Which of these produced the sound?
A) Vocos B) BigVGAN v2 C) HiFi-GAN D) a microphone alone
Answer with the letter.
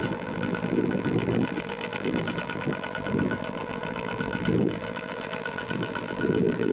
B